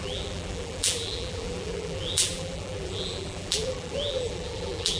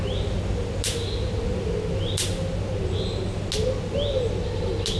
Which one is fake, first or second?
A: first